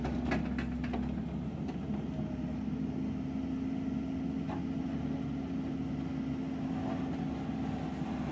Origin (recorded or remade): recorded